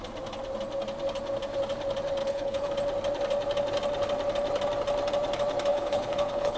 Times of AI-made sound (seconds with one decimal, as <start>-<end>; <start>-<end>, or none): 2.2-2.7; 5.7-6.6